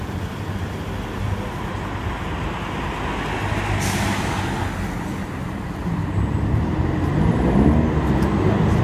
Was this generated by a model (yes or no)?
no